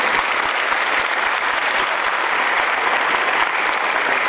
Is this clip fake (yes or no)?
no